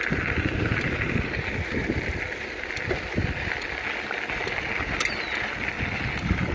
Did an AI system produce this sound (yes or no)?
no